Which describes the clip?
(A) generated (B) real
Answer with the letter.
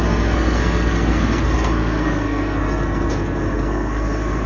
A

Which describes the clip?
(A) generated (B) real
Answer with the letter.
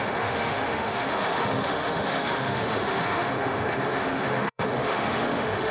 A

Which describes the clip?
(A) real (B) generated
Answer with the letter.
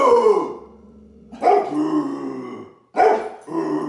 A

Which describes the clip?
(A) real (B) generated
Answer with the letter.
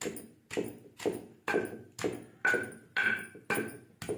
A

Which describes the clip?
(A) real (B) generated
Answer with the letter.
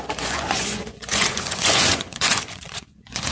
B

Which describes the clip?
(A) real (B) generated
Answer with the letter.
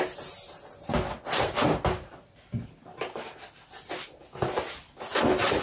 A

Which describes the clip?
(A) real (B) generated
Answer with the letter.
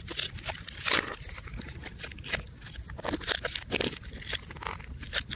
A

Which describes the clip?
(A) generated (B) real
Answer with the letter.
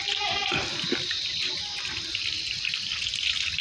B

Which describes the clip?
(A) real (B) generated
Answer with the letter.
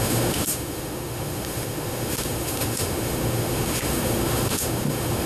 B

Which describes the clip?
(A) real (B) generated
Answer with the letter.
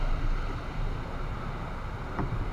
A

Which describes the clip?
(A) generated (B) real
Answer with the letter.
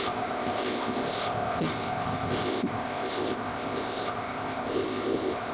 A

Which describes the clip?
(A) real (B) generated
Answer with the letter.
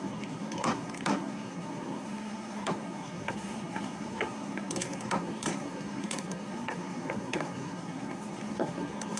B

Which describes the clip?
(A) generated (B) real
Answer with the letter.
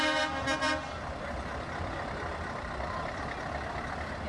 B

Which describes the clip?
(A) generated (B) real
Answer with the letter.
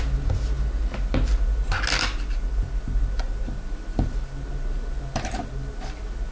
B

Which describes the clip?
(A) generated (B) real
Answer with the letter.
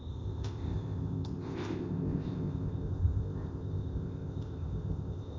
A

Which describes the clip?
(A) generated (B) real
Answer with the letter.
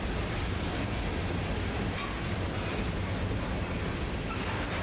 B